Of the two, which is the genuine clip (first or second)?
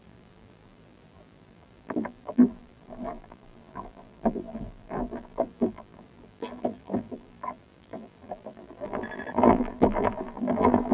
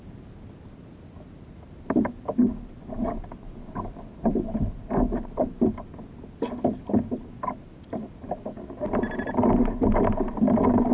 second